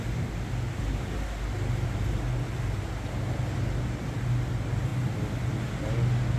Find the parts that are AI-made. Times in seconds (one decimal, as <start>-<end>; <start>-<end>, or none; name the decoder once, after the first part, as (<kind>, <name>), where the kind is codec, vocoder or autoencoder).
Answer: none